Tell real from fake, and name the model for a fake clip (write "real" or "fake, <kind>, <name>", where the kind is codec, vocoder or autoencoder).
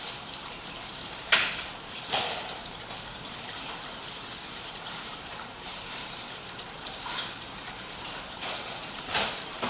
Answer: fake, vocoder, BigVGAN v2